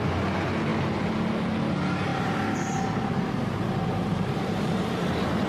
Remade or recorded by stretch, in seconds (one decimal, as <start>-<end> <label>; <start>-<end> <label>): 0.0-2.1 recorded; 2.1-2.8 remade; 2.8-4.1 recorded; 4.1-4.8 remade; 4.8-5.5 recorded